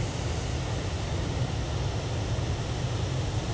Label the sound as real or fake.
real